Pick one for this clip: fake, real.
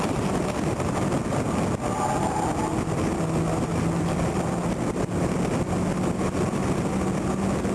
real